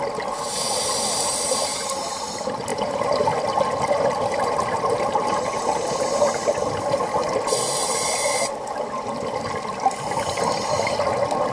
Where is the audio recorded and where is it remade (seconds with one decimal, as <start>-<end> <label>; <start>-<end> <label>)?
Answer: 0.0-1.7 recorded; 1.7-2.3 remade; 2.3-2.7 recorded; 2.7-6.5 remade; 6.5-11.5 recorded